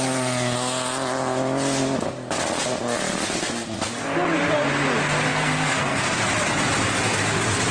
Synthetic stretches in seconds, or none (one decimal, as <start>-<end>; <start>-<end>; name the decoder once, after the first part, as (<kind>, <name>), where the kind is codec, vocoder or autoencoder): 5.3-6.2 (codec, SNAC)